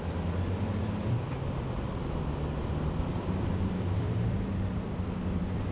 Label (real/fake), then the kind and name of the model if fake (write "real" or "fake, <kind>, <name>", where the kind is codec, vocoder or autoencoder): fake, vocoder, BigVGAN v2